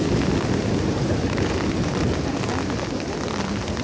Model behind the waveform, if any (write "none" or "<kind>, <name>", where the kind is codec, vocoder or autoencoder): none